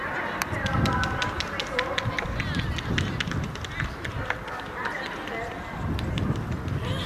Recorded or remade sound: recorded